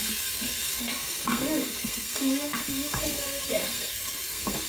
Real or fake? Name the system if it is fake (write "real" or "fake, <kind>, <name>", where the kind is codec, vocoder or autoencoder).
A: fake, codec, SNAC